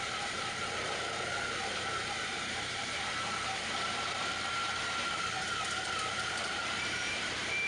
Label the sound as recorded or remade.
remade